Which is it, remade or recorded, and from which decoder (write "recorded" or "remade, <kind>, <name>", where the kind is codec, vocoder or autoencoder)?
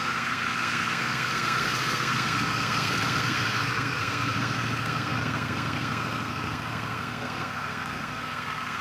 remade, codec, SNAC